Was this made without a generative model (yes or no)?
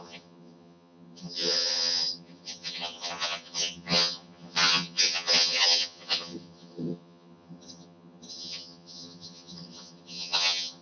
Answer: no